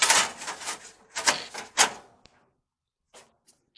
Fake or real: real